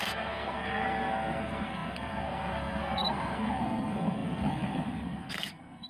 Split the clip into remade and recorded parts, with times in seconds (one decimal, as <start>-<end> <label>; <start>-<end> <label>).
0.0-5.9 remade